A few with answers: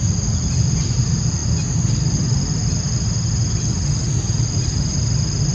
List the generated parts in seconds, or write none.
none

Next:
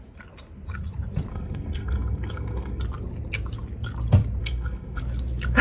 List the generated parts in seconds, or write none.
1.3-2.8; 4.4-5.0